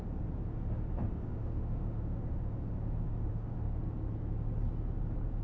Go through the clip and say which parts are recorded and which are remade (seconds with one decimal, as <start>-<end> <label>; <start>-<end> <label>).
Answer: 0.0-1.1 recorded; 1.1-3.8 remade; 3.8-5.4 recorded